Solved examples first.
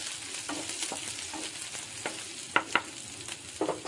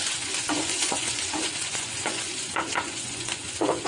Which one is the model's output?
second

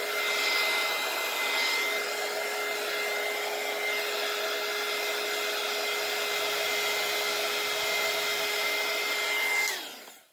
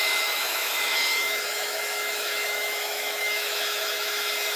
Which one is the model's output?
second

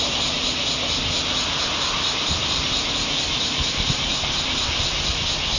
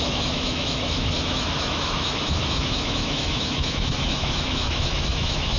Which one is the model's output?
second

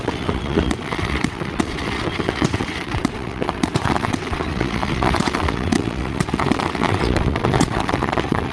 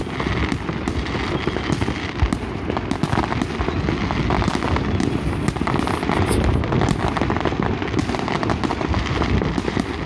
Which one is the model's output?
first